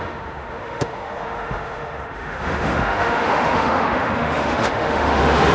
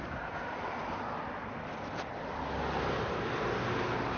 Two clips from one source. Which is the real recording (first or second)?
second